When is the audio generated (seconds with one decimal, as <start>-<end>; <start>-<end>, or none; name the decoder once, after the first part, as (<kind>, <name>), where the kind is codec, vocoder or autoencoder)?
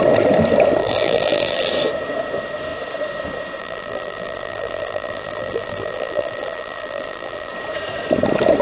0.8-1.7 (vocoder, BigVGAN v2); 3.6-7.5